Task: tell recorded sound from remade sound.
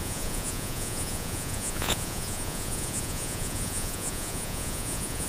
remade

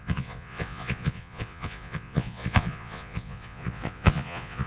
remade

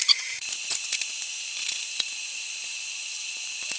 remade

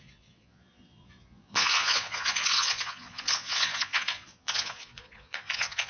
remade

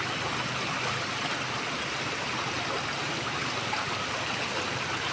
recorded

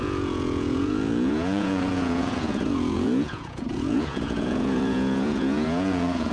remade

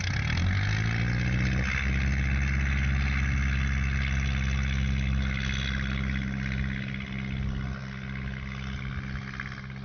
recorded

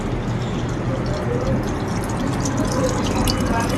recorded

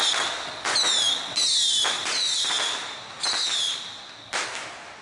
recorded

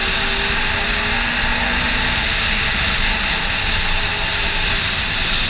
recorded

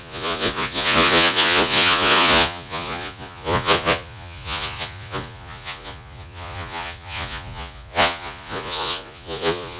remade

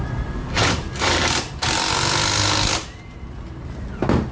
recorded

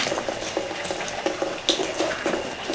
recorded